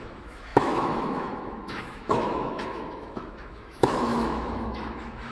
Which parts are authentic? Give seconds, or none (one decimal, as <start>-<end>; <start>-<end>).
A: none